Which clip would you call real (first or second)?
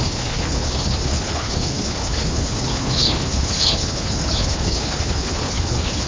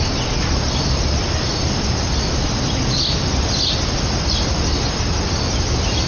second